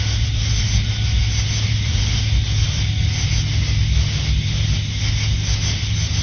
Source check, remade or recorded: recorded